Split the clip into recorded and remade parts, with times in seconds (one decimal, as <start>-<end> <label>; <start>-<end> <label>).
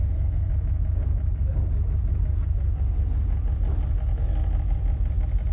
0.0-0.5 remade; 0.5-5.5 recorded